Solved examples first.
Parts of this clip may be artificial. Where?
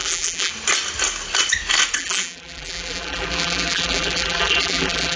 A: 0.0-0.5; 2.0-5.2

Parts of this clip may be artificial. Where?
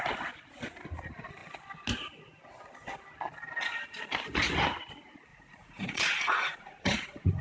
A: 5.3-7.4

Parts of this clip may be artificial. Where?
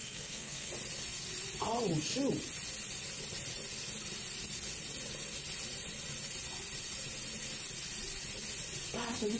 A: 0.0-0.7